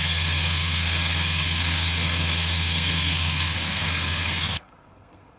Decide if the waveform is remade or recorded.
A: remade